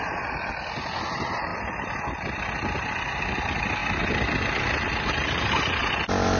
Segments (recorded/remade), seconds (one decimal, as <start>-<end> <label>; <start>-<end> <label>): 0.0-6.4 recorded